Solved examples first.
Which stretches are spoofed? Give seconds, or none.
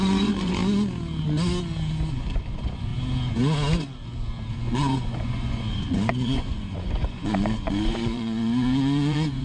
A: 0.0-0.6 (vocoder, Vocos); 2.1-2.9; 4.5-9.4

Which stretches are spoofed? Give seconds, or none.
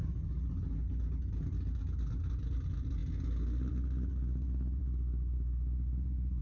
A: none